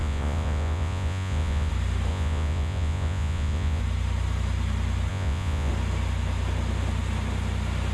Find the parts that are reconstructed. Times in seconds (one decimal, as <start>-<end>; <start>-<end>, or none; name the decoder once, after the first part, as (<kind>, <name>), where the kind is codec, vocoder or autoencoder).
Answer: 0.0-1.7 (vocoder, Vocos); 2.1-3.8; 5.1-5.7